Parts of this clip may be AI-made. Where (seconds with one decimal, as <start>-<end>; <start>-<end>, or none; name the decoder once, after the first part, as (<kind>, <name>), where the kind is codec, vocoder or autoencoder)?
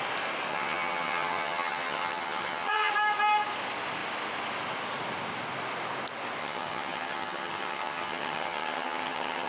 0.5-2.9 (vocoder, HiFi-GAN); 6.4-9.5